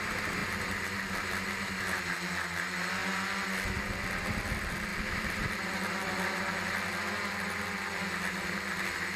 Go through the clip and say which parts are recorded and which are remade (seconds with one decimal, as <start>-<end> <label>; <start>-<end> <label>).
0.0-0.4 recorded; 0.4-1.2 remade; 1.2-4.9 recorded; 4.9-6.1 remade; 6.1-9.2 recorded

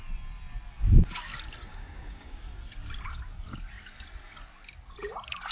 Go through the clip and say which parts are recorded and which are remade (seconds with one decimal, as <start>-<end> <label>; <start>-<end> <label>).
0.0-1.7 recorded; 1.7-2.4 remade; 2.4-5.5 recorded

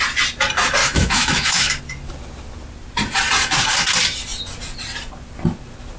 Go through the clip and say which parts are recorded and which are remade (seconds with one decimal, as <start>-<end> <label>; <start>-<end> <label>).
0.0-0.8 recorded; 0.8-1.8 remade; 1.8-6.0 recorded

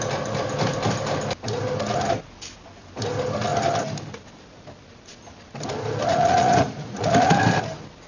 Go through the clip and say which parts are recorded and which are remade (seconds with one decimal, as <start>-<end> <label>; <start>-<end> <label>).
0.0-6.1 recorded; 6.1-7.3 remade; 7.3-8.1 recorded

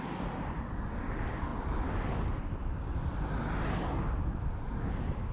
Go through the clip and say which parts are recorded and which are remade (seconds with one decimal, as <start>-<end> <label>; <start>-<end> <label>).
0.0-5.3 recorded